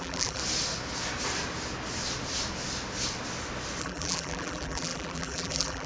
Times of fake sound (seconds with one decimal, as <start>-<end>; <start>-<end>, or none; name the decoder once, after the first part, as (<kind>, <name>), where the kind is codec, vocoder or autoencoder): 0.0-0.4 (vocoder, BigVGAN v2); 3.8-5.9